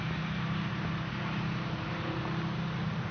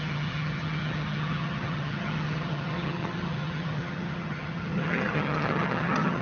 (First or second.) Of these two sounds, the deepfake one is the second